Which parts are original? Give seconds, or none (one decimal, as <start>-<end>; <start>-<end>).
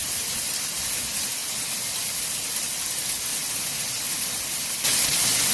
0.9-3.3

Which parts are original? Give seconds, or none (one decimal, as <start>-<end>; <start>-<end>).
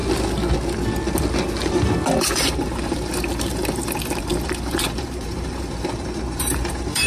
0.0-2.2